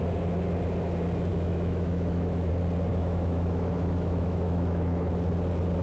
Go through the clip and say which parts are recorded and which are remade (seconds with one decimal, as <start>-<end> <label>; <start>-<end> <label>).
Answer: 0.0-1.3 recorded; 1.3-2.5 remade; 2.5-2.9 recorded; 2.9-5.1 remade; 5.1-5.8 recorded